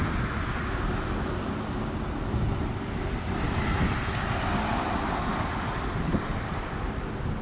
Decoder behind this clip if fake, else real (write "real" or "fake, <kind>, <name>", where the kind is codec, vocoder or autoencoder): real